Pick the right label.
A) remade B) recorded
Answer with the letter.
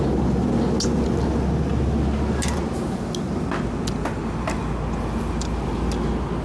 B